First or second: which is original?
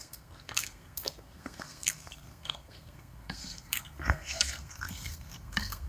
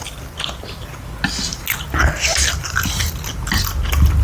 second